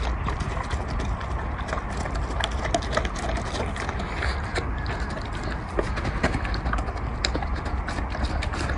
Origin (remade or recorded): recorded